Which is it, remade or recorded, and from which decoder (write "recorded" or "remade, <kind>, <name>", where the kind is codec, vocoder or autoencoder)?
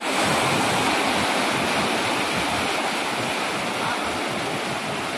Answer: recorded